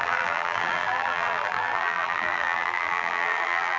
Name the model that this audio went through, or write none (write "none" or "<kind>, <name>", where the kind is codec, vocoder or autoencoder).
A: vocoder, BigVGAN v2